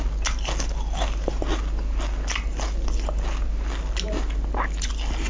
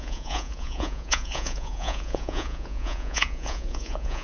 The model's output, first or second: second